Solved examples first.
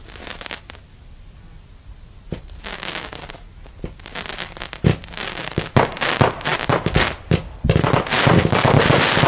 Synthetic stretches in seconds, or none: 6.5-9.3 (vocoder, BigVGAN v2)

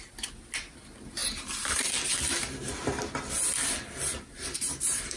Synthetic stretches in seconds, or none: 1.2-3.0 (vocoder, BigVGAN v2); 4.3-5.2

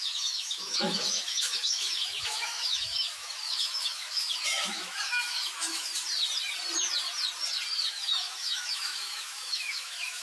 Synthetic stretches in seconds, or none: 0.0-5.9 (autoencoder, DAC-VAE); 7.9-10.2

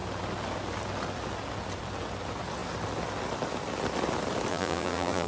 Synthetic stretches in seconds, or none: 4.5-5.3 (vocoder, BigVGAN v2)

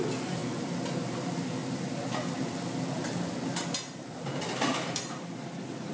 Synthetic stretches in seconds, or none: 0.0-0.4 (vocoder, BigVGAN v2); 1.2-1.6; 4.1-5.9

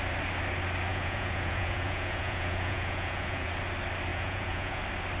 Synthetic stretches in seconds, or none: 0.9-3.5 (vocoder, Vocos); 4.1-4.8

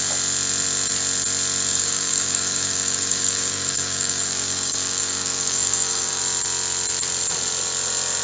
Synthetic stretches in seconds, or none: 1.7-6.2 (codec, DAC)

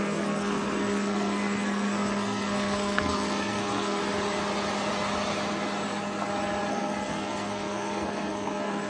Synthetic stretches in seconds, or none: 0.0-4.0 (codec, SNAC); 6.7-8.9